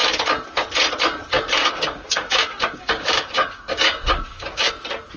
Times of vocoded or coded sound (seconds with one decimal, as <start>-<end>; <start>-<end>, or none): 1.6-4.7